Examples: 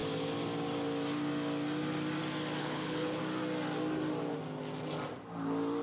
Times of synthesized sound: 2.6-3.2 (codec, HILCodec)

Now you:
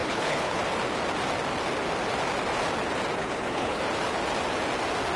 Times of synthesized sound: 0.0-0.6 (codec, HILCodec); 3.2-3.8

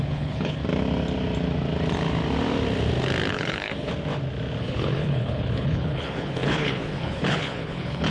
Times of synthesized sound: 0.0-0.6 (codec, HILCodec); 3.3-3.9; 4.6-8.1

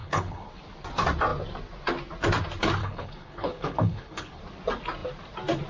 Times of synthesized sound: 0.0-0.5 (codec, HILCodec); 2.8-4.4